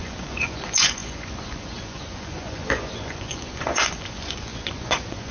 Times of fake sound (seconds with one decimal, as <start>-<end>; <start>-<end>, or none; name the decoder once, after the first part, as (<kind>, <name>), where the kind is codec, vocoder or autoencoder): 0.0-5.3 (vocoder, Vocos)